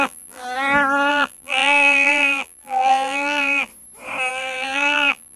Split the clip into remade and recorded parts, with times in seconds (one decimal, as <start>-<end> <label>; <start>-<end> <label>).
0.0-0.4 remade; 0.4-1.1 recorded; 1.1-3.7 remade; 3.7-4.3 recorded; 4.3-5.4 remade